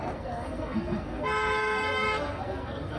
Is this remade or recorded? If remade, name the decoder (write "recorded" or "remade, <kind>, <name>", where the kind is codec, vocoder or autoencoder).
remade, codec, SNAC